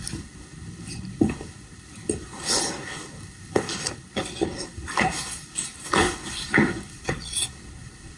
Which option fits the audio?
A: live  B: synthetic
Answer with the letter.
B